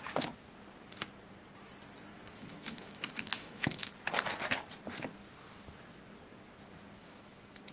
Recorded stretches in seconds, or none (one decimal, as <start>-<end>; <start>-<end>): 0.0-2.1; 3.9-7.0